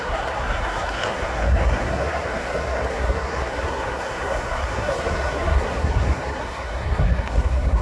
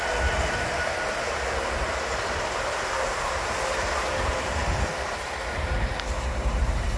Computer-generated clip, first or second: first